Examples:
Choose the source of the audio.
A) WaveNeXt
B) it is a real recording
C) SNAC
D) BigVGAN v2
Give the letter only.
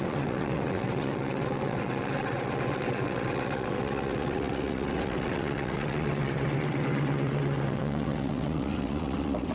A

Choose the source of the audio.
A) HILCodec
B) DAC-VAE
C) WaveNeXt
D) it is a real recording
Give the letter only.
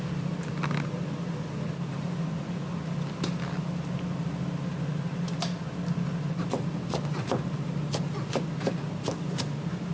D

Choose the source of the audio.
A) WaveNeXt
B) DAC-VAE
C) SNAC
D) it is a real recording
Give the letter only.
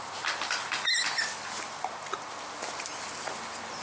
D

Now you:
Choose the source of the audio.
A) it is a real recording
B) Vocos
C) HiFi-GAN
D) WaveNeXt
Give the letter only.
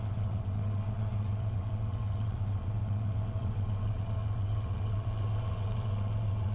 D